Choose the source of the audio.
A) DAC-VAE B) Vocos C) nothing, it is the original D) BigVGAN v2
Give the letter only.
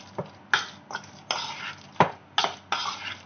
C